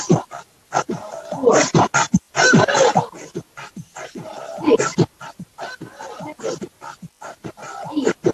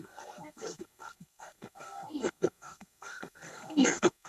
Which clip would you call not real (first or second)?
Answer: second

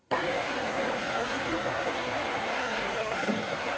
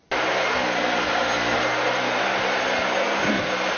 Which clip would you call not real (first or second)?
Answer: first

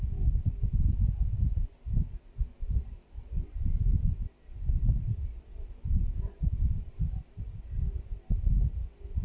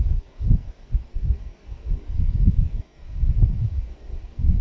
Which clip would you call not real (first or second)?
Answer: second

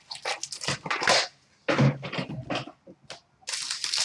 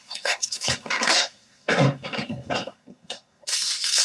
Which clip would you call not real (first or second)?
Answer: second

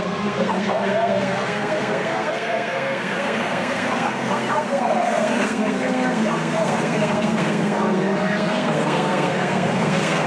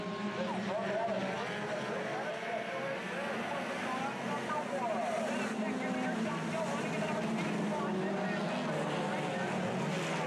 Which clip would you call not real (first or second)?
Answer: first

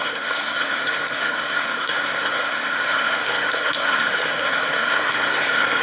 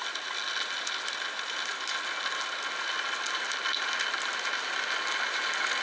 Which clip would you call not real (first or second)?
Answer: first